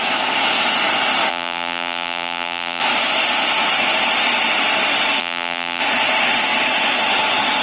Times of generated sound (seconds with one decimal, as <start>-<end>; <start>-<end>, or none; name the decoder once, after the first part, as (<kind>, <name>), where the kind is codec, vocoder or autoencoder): 1.3-2.8 (vocoder, BigVGAN v2); 5.2-5.8